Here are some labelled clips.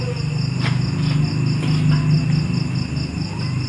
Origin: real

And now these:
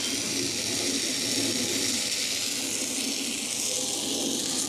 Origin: real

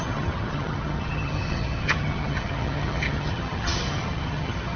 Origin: fake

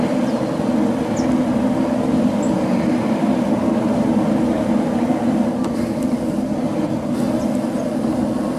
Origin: real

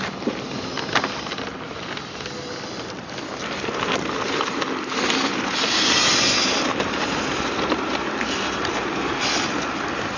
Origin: real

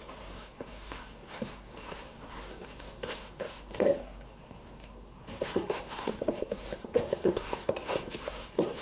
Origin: fake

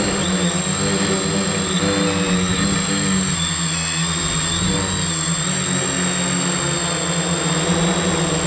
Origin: real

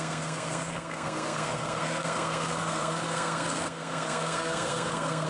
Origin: fake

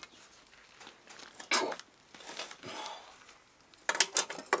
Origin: real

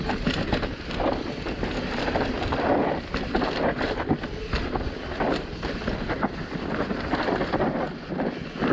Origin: real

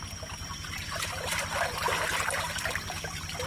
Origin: real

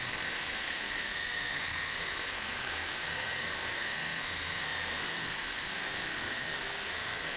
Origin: fake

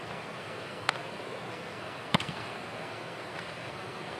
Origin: fake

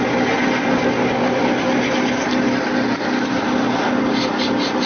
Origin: real